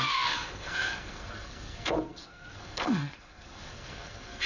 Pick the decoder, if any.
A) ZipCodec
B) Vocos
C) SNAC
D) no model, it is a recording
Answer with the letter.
C